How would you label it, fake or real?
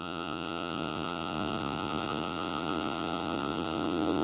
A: fake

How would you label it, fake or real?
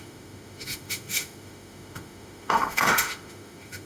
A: fake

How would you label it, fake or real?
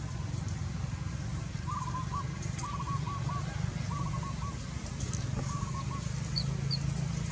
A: real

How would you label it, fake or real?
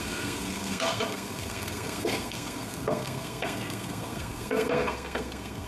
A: fake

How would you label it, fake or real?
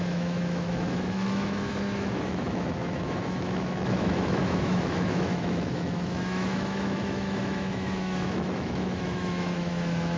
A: fake